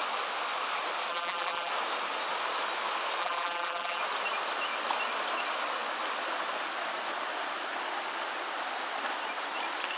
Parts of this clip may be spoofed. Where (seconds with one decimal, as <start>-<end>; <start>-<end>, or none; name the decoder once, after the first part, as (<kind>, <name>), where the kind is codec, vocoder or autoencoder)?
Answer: 1.1-1.7 (vocoder, BigVGAN v2); 3.2-4.0